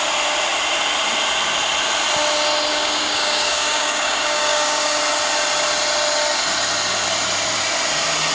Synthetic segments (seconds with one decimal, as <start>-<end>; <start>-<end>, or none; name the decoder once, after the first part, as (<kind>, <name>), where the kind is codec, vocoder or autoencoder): 2.7-5.0 (codec, DAC)